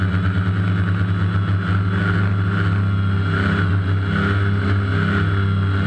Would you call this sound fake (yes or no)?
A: no